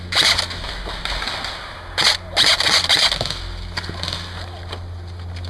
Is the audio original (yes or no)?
yes